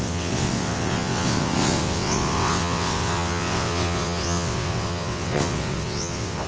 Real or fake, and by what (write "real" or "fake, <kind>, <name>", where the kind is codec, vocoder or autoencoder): fake, vocoder, WaveNeXt